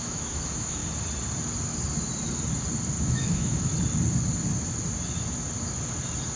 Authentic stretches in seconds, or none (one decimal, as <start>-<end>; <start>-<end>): 0.8-3.0; 3.7-6.4